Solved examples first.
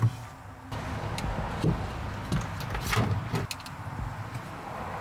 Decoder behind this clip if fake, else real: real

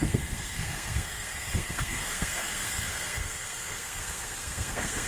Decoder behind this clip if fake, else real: fake, codec, SNAC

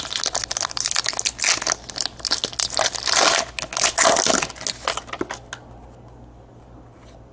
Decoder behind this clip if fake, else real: real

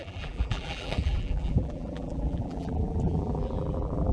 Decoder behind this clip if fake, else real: fake, vocoder, BigVGAN v2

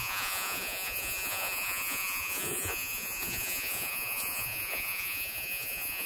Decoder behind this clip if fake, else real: fake, vocoder, Vocos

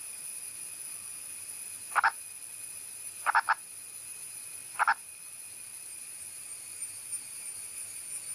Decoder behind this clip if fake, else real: real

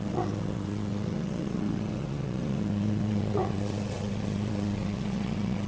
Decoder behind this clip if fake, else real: fake, vocoder, WaveNeXt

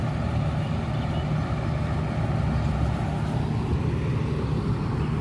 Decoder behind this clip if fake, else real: real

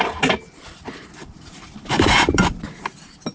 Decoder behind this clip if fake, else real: real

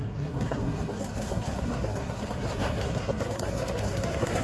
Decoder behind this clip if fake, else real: fake, codec, SNAC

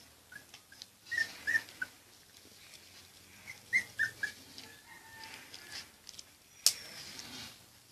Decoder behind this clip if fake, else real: real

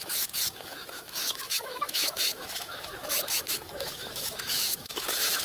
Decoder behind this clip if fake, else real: fake, autoencoder, DAC-VAE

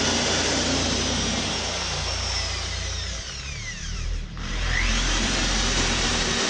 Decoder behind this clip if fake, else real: fake, vocoder, BigVGAN v2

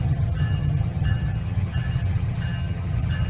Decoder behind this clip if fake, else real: fake, vocoder, HiFi-GAN